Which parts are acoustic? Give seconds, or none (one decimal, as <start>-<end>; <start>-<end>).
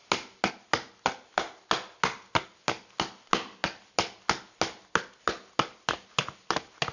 0.0-6.9